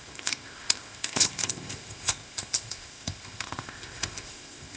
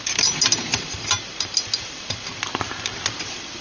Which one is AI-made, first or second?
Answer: first